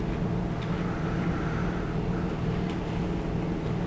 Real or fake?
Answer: real